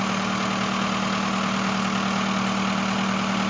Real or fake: real